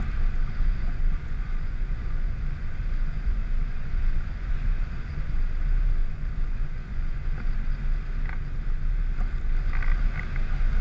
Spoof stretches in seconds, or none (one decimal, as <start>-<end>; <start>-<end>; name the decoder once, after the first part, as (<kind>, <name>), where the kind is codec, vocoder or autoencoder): 0.4-5.4 (vocoder, Vocos); 6.0-7.2